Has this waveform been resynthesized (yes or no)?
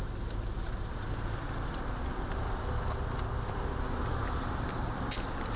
no